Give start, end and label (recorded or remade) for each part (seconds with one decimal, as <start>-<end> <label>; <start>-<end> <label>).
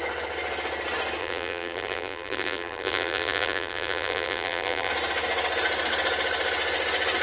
0.0-1.2 recorded; 1.2-4.9 remade; 4.9-7.2 recorded